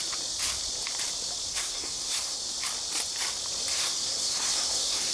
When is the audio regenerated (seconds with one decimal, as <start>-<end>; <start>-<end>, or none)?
1.5-2.4; 3.7-5.1